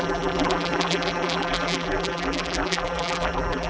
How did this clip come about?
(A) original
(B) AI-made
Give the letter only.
B